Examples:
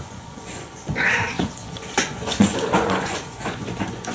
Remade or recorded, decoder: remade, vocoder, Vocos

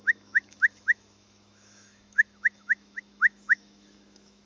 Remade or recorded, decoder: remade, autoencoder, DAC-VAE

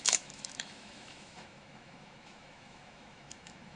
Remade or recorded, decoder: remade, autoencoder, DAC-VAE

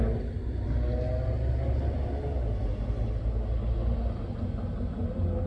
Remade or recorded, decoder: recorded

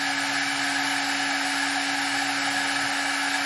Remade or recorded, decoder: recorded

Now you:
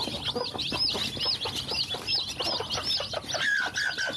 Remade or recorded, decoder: recorded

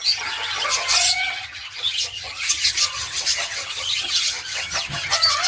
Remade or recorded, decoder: remade, vocoder, HiFi-GAN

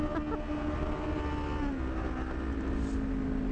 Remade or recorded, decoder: recorded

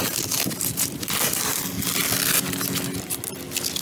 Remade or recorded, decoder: recorded